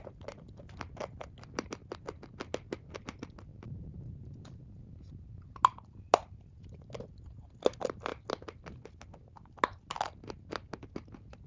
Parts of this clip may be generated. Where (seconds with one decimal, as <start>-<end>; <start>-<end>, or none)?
3.5-5.4